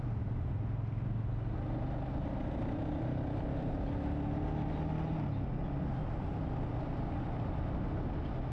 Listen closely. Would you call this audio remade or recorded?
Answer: recorded